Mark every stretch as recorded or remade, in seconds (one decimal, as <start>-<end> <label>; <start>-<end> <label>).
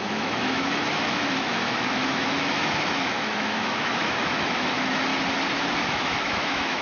0.0-5.1 remade; 5.1-5.6 recorded; 5.6-6.8 remade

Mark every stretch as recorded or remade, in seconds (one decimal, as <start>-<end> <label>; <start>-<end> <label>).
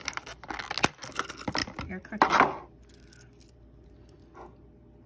0.0-5.1 recorded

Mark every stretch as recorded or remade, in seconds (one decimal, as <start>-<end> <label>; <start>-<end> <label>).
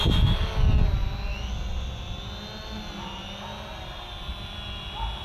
0.0-5.2 recorded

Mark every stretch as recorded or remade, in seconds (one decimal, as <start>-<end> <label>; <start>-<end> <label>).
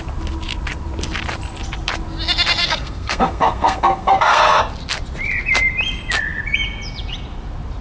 0.0-2.6 recorded; 2.6-4.6 remade; 4.6-7.8 recorded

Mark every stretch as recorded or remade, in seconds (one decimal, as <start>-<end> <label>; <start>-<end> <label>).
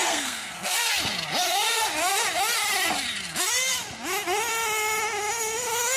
0.0-1.0 remade; 1.0-6.0 recorded